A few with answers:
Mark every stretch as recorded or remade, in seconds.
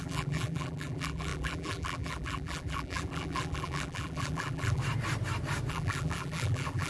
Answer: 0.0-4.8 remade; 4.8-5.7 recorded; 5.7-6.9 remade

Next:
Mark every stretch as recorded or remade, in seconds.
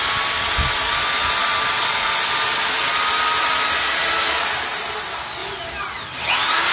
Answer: 0.0-6.7 recorded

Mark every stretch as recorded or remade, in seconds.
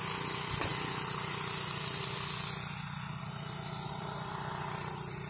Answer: 0.0-0.7 remade; 0.7-3.9 recorded; 3.9-5.3 remade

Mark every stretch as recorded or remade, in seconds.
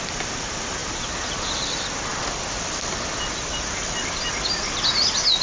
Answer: 0.0-0.8 recorded; 0.8-1.7 remade; 1.7-2.1 recorded; 2.1-3.1 remade; 3.1-3.8 recorded; 3.8-4.3 remade; 4.3-5.4 recorded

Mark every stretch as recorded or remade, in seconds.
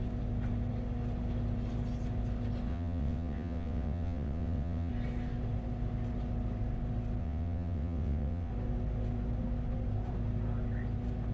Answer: 0.0-2.7 recorded; 2.7-4.9 remade; 4.9-7.2 recorded; 7.2-8.5 remade; 8.5-11.3 recorded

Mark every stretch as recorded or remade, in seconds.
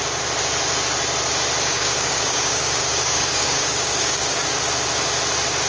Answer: 0.0-1.7 recorded; 1.7-4.6 remade; 4.6-5.7 recorded